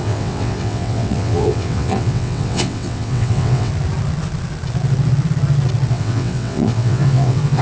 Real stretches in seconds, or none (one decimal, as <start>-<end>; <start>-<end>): 3.7-5.9